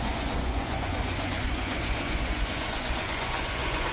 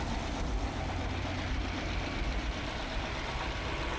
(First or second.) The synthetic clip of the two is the first